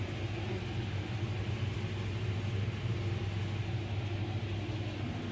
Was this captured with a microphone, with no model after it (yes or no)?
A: yes